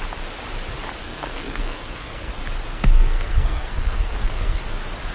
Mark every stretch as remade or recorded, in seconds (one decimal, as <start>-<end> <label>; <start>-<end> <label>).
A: 0.0-1.0 recorded; 1.0-2.3 remade; 2.3-2.7 recorded; 2.7-4.6 remade; 4.6-5.1 recorded